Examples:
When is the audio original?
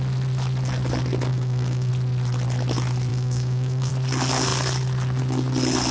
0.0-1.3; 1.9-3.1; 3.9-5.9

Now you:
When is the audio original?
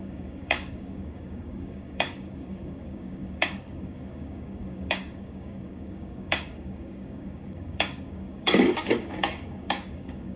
none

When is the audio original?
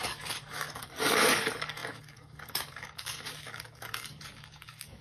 none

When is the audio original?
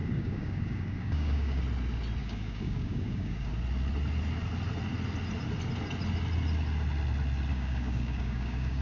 1.6-2.2; 3.5-7.5